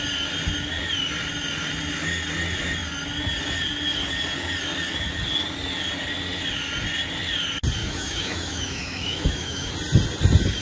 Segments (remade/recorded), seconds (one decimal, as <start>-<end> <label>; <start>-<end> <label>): 0.0-7.8 recorded; 7.8-9.7 remade; 9.7-10.6 recorded